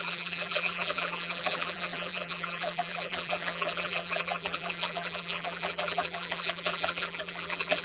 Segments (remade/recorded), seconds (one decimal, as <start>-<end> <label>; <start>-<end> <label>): 0.0-7.8 remade